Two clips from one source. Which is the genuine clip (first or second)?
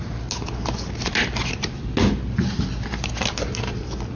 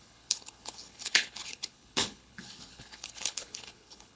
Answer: first